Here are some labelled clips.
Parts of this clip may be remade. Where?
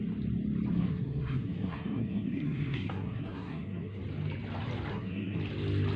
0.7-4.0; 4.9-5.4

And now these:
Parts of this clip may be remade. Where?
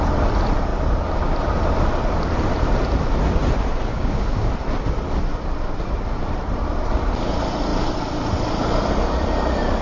3.9-4.5